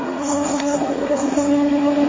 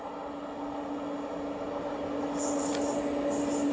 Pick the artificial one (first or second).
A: first